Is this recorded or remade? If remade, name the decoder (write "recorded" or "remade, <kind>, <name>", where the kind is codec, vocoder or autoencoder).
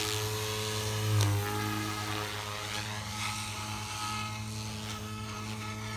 recorded